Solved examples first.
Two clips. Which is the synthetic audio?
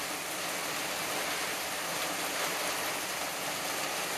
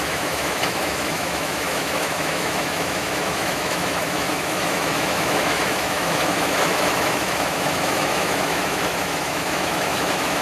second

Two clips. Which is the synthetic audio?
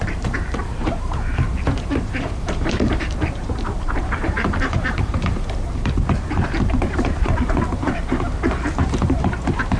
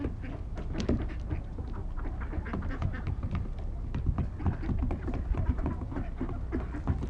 first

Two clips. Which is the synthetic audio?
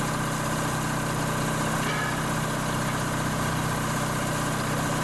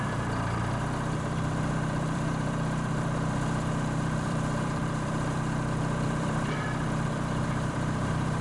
second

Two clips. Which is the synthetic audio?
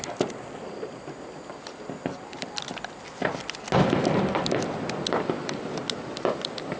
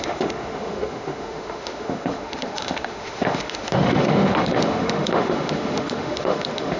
second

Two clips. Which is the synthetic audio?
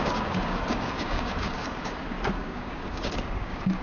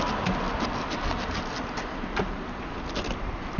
first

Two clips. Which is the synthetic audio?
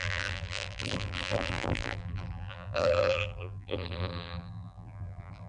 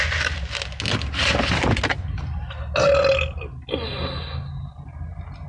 first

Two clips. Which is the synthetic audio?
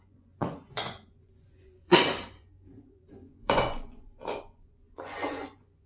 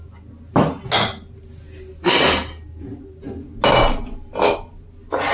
first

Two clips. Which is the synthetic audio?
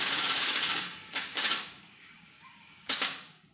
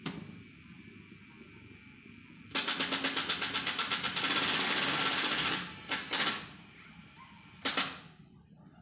first